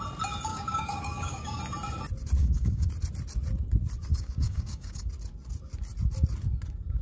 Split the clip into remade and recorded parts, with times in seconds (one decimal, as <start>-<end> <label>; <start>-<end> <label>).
0.0-0.5 recorded; 0.5-1.6 remade; 1.6-2.4 recorded; 2.4-2.9 remade; 2.9-4.1 recorded; 4.1-5.1 remade; 5.1-7.0 recorded